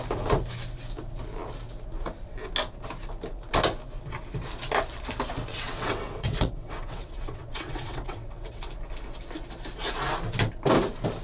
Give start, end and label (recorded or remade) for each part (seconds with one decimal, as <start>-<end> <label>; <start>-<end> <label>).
0.0-5.5 recorded; 5.5-8.7 remade; 8.7-11.2 recorded